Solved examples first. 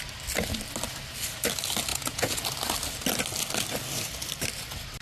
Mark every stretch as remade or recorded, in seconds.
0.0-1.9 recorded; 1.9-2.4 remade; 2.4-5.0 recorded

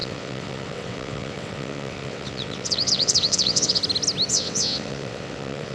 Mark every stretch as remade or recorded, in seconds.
0.0-3.8 remade; 3.8-4.3 recorded; 4.3-5.7 remade